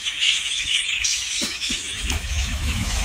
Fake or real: fake